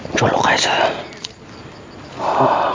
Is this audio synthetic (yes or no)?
no